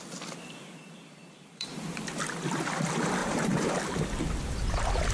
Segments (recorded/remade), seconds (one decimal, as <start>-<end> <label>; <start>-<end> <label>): 0.0-1.2 recorded; 1.2-2.2 remade; 2.2-3.2 recorded; 3.2-3.7 remade; 3.7-5.1 recorded